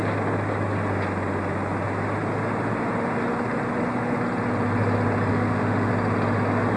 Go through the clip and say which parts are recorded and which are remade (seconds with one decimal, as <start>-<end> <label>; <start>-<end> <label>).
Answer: 0.0-5.3 recorded; 5.3-5.9 remade; 5.9-6.8 recorded